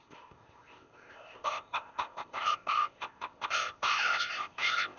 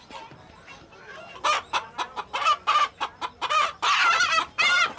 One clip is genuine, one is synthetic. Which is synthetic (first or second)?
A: first